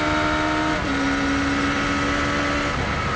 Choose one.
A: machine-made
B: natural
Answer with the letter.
B